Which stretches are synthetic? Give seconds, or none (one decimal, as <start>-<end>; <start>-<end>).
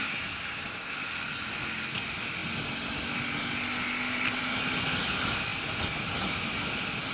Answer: 0.0-1.0